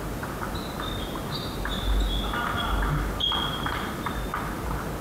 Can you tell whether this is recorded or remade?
recorded